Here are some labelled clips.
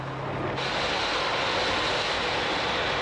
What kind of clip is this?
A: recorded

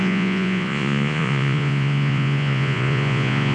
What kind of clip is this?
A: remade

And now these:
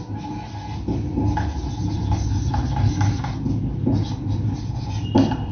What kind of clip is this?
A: recorded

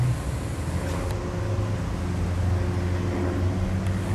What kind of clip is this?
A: recorded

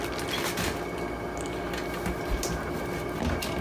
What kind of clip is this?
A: recorded